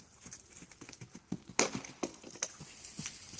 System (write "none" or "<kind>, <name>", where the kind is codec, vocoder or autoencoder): none